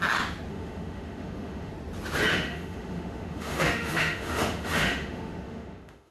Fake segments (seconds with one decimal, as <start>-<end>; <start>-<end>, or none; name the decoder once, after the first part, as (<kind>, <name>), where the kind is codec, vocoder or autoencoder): 0.5-1.7 (autoencoder, DAC-VAE); 2.3-6.1